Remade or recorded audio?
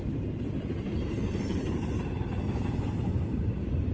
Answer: remade